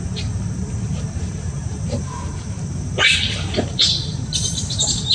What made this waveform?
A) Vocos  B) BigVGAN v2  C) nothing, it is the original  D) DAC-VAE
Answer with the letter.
B